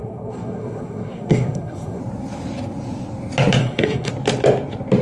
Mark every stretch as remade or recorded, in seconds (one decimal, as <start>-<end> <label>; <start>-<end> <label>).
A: 0.0-2.0 remade; 2.0-3.6 recorded; 3.6-4.1 remade; 4.1-5.0 recorded